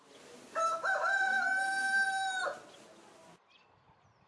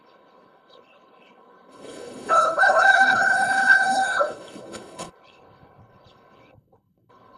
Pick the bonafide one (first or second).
first